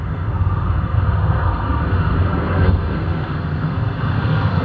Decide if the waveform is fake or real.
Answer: fake